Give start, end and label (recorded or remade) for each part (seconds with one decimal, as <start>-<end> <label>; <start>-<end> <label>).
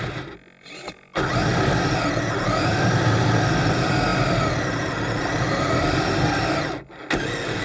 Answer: 0.0-7.6 recorded